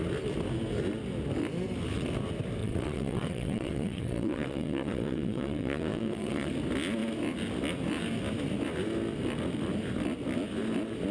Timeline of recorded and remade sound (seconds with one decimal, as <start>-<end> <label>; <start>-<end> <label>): 0.0-2.6 recorded; 2.6-6.5 remade; 6.5-11.1 recorded